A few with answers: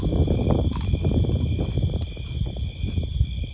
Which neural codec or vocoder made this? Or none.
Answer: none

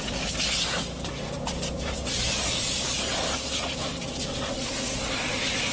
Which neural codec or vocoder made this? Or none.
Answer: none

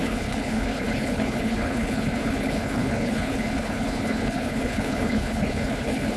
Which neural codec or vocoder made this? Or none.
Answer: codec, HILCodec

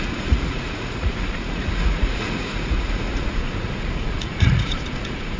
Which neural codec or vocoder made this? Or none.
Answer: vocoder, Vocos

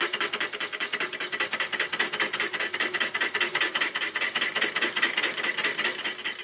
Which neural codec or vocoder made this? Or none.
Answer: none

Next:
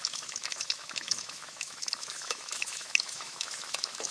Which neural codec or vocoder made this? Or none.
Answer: autoencoder, DAC-VAE